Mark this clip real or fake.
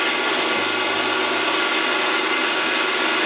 real